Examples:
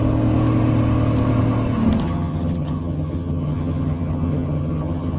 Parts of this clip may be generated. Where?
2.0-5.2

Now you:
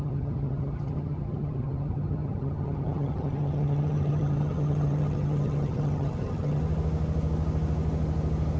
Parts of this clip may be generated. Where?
0.0-6.6

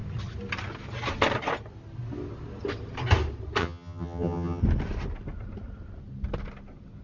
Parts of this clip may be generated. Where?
3.6-4.6

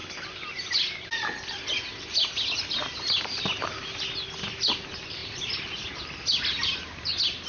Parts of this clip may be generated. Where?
none

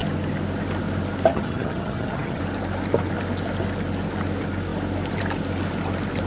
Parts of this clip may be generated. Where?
1.3-2.4

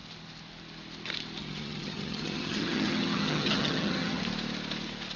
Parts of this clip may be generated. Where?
1.4-4.2